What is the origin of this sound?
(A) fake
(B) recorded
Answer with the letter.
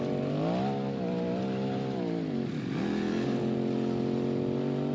B